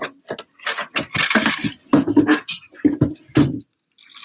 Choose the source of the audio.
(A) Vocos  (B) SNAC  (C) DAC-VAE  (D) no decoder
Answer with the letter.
D